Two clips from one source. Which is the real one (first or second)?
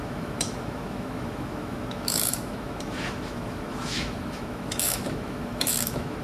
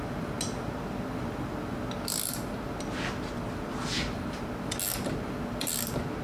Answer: second